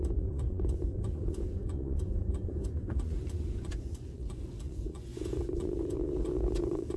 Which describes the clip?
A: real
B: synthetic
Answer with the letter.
B